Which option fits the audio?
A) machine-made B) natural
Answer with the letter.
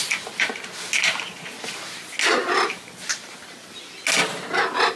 B